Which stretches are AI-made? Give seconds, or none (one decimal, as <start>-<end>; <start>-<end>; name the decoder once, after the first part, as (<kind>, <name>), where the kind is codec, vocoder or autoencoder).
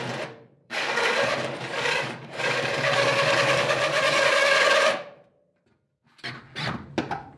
0.6-4.9 (codec, DAC)